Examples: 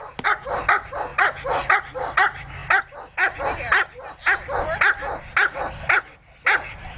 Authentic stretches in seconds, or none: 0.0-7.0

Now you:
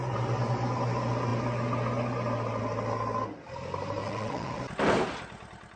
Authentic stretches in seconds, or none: 0.0-4.0; 4.6-5.8

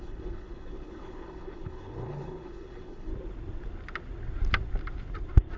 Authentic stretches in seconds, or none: 3.1-5.6

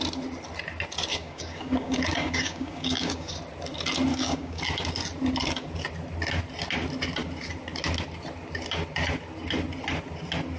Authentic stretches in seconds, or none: 0.0-1.1; 3.3-4.1; 4.6-10.6